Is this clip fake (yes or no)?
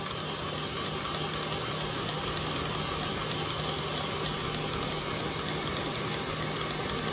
no